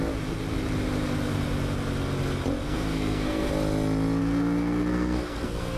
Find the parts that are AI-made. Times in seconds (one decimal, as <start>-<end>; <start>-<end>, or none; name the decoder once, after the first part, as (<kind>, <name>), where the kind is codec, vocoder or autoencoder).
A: 2.6-3.5 (codec, SNAC); 4.2-5.8